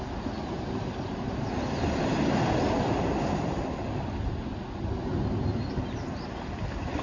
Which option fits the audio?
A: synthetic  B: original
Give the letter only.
B